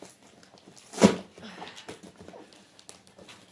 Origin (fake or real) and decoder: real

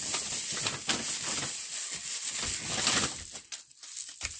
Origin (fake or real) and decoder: real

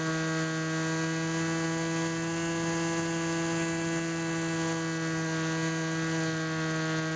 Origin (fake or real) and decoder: real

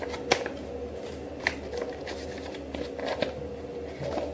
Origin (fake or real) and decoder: real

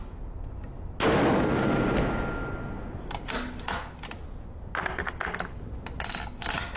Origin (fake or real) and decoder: real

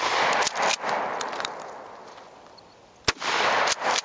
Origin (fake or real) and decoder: real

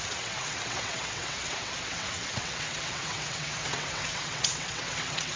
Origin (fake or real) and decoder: fake, vocoder, WaveNeXt